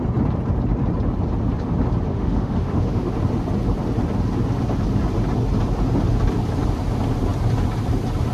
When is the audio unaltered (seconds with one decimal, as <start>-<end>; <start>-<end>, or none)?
0.0-2.1; 3.1-8.3